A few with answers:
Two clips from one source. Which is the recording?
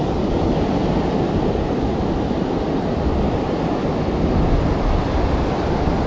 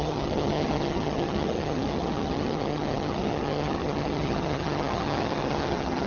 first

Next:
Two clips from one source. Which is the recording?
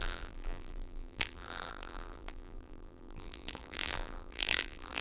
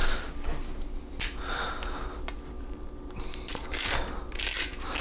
second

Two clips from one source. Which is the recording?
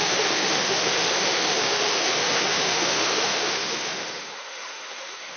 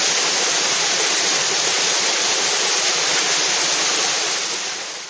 second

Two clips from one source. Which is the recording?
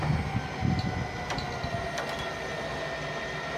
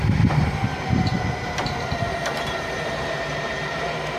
first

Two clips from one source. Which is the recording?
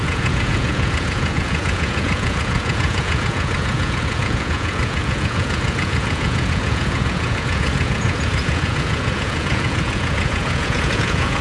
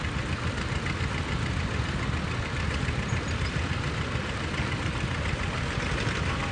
second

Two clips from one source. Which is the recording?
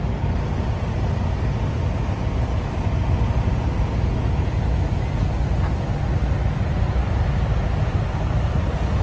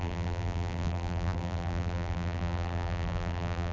first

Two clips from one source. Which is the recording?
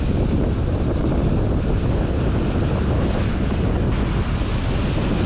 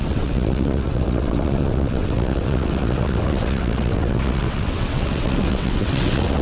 first